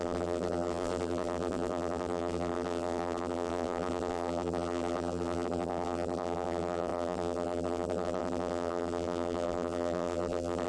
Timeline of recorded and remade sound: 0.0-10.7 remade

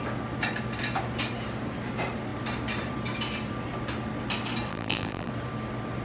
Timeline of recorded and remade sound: 0.0-4.7 recorded; 4.7-5.3 remade; 5.3-6.0 recorded

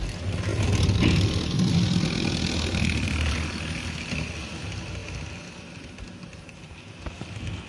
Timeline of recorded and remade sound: 0.0-0.5 remade; 0.5-4.1 recorded; 4.1-5.0 remade; 5.0-7.7 recorded